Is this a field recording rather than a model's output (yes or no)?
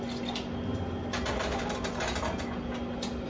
yes